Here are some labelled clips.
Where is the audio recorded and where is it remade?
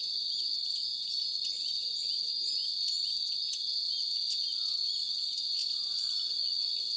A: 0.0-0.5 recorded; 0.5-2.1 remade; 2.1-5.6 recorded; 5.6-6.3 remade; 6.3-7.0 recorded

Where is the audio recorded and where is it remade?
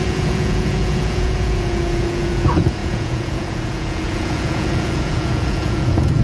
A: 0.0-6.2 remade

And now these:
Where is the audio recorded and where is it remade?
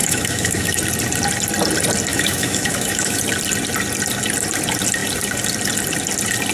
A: 0.0-0.8 remade; 0.8-2.1 recorded; 2.1-3.2 remade; 3.2-6.5 recorded